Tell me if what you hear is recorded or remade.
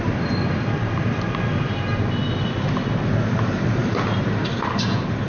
recorded